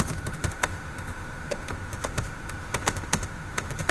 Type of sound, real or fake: fake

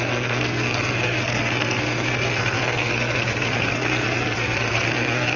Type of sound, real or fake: fake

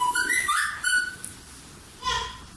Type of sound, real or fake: real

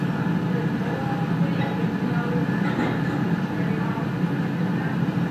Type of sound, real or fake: real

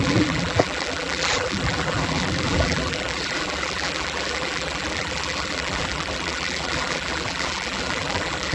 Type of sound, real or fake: fake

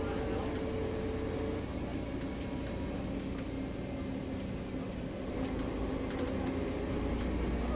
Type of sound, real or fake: real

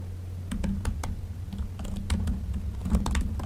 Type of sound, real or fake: real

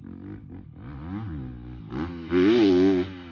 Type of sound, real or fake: real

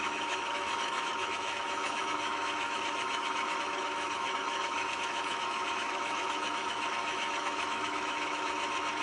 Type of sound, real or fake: fake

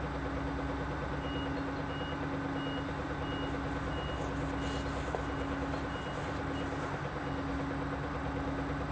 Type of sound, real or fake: real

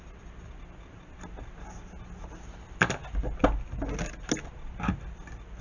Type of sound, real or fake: real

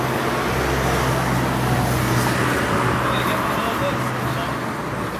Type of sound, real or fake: real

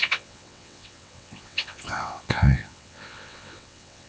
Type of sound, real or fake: fake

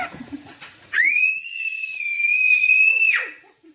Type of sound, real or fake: fake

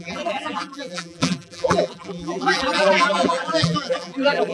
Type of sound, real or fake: fake